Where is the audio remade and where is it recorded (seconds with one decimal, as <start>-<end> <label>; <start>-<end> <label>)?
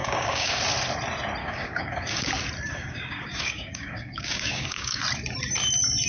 0.0-0.6 remade; 0.6-1.4 recorded; 1.4-2.3 remade; 2.3-2.7 recorded; 2.7-5.0 remade; 5.0-6.1 recorded